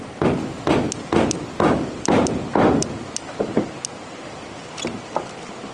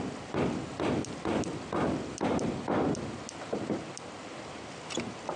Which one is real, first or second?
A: first